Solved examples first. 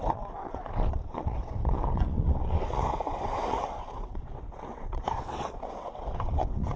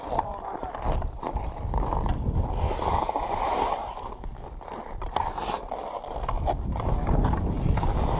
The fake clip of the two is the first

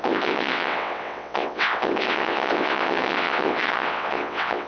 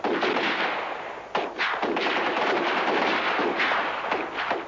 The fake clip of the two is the first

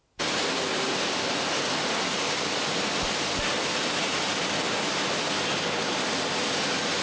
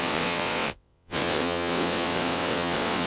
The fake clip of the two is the second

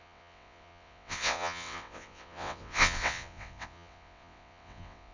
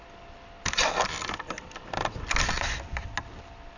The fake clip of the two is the first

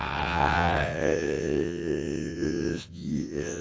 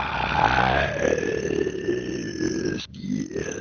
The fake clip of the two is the first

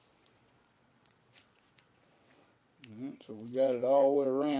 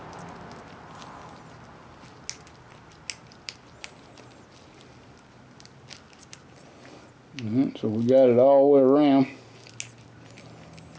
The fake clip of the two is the first